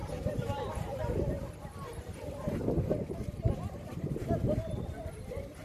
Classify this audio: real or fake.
fake